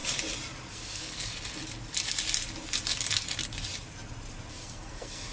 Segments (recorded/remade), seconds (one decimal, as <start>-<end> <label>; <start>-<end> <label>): 0.0-0.7 recorded; 0.7-1.3 remade; 1.3-4.5 recorded; 4.5-5.3 remade